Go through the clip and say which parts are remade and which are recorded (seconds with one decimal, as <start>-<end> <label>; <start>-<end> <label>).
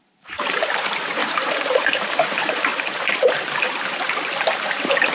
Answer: 0.0-2.7 remade; 2.7-5.1 recorded